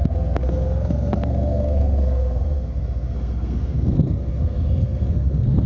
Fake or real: fake